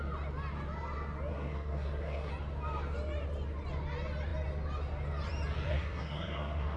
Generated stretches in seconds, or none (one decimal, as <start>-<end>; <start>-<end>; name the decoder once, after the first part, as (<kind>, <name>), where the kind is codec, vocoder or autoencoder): 1.3-2.3 (codec, SNAC); 5.7-6.8